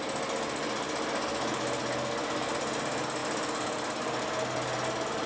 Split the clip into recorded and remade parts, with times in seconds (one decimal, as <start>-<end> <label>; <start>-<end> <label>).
0.0-5.3 recorded